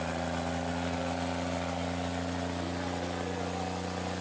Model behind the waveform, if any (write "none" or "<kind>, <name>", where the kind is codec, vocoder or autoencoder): none